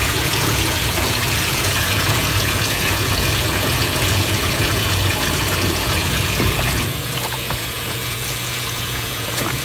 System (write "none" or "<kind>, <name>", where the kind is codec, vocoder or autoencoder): vocoder, Vocos